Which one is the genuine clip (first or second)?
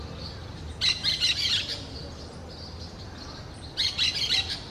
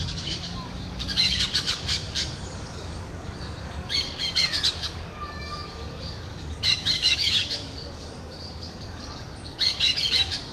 first